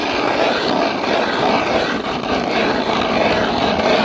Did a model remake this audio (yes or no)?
no